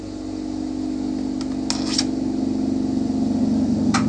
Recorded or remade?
recorded